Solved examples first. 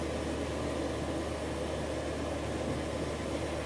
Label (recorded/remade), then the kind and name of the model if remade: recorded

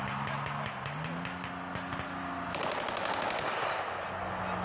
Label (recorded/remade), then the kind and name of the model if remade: recorded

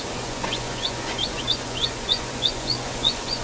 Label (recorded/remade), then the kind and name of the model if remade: remade, vocoder, Vocos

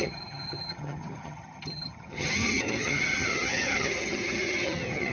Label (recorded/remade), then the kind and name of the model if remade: remade, vocoder, HiFi-GAN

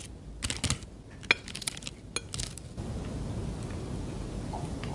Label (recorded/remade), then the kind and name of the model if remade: recorded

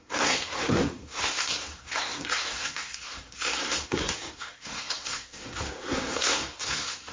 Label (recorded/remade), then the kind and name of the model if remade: remade, codec, SNAC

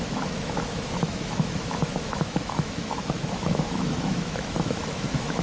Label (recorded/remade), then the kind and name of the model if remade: remade, autoencoder, DAC-VAE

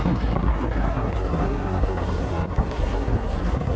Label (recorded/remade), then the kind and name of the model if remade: remade, codec, SNAC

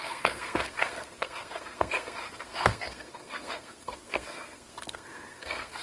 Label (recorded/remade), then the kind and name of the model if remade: remade, codec, SNAC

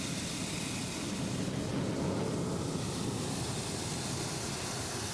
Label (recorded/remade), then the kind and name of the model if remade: recorded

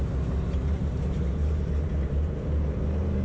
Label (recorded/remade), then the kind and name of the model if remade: remade, vocoder, BigVGAN v2